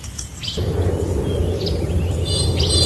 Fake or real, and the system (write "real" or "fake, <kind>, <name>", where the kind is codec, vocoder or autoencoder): real